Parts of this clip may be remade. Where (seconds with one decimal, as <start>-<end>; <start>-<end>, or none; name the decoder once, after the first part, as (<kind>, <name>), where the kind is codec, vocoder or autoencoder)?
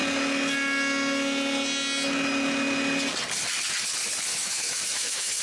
4.3-5.4 (autoencoder, DAC-VAE)